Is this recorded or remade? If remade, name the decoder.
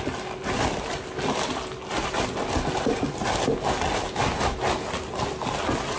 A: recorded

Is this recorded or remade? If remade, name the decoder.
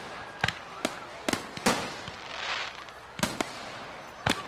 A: recorded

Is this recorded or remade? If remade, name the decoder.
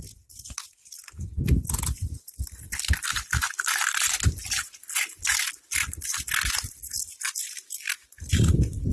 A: recorded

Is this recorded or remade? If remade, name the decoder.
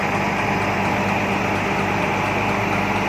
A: recorded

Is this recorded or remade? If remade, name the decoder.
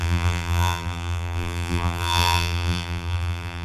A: remade, vocoder, BigVGAN v2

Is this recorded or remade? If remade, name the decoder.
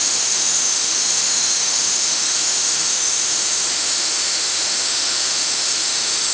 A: remade, autoencoder, DAC-VAE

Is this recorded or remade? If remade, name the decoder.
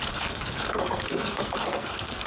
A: remade, codec, SNAC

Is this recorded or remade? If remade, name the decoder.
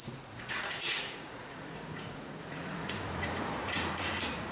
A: remade, vocoder, Vocos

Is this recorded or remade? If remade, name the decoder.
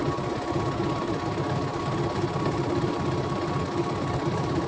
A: recorded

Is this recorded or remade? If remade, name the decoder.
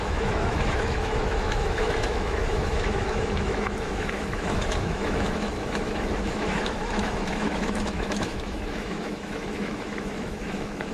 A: remade, autoencoder, DAC-VAE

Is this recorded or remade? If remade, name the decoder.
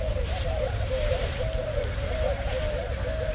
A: recorded